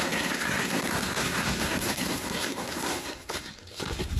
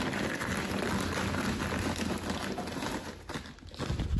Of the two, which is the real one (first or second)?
second